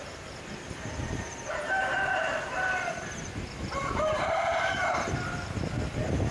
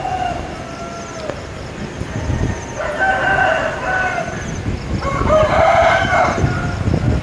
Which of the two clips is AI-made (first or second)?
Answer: first